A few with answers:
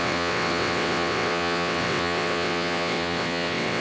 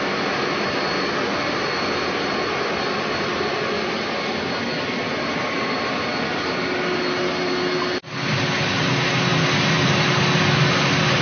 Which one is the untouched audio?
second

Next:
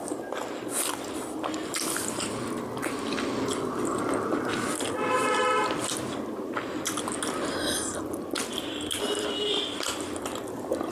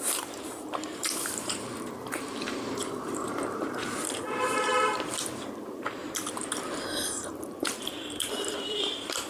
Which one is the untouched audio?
first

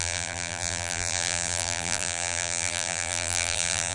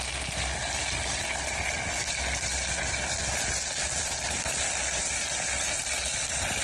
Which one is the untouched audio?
second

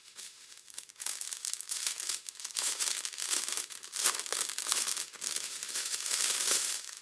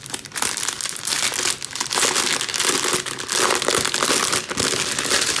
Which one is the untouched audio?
second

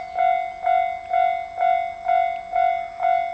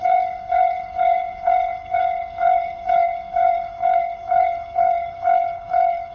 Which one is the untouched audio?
first